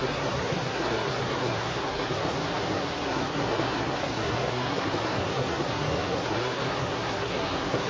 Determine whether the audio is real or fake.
fake